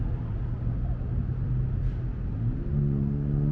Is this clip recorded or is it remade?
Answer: recorded